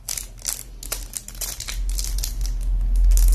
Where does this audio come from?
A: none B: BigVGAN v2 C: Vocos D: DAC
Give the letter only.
A